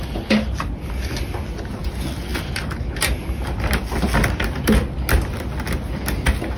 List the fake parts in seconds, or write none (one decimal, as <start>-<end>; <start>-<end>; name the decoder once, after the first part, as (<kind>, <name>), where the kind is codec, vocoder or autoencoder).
none